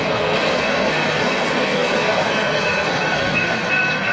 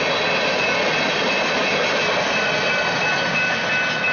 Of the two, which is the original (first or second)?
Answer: second